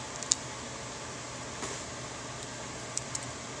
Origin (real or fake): real